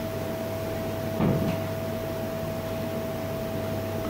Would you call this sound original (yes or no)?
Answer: yes